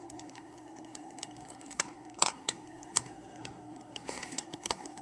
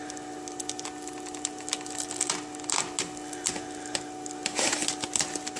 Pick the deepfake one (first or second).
first